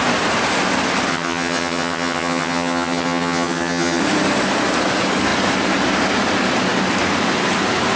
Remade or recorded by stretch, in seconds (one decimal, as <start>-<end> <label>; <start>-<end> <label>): 0.0-1.1 recorded; 1.1-4.0 remade; 4.0-8.0 recorded